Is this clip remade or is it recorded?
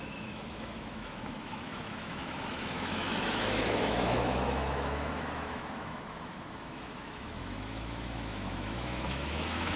remade